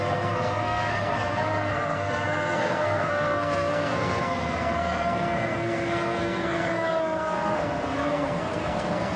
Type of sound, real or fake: fake